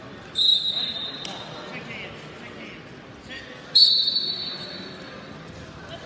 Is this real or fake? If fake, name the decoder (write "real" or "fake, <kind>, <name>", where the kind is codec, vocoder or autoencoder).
real